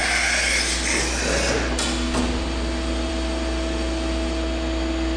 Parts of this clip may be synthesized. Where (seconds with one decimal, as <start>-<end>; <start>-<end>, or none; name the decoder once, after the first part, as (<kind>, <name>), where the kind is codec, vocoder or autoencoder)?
none